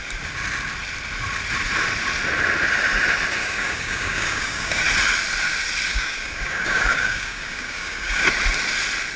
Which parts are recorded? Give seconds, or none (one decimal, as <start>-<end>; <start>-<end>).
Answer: 0.0-3.4; 4.8-5.9; 8.2-9.2